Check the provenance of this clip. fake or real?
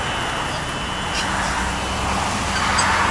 real